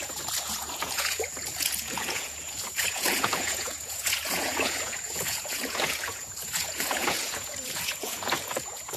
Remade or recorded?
remade